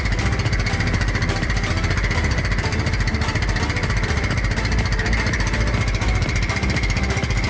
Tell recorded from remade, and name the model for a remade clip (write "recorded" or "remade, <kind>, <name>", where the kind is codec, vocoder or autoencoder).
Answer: recorded